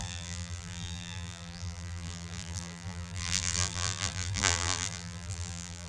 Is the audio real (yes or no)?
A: no